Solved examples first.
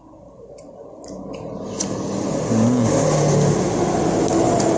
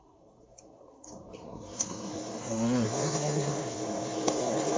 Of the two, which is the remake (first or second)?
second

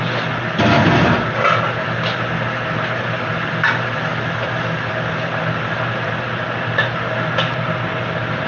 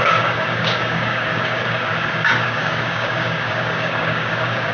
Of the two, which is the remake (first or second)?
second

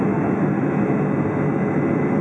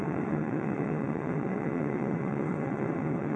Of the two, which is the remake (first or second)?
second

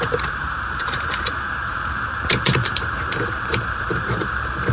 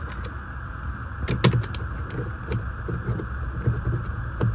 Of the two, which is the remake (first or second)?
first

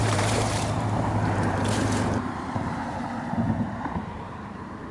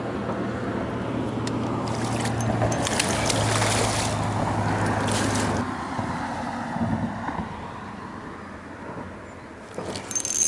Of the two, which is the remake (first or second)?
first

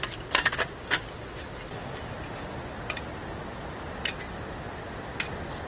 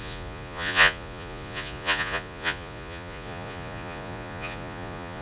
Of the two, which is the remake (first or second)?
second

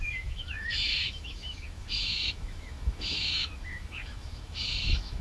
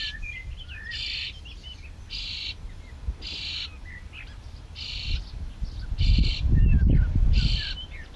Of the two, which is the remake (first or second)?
first